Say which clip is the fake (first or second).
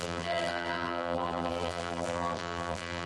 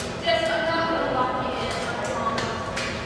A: first